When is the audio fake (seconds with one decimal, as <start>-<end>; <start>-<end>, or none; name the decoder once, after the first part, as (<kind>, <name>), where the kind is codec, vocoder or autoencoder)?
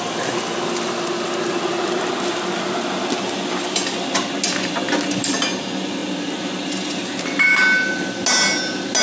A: none